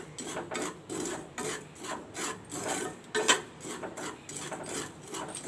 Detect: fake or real real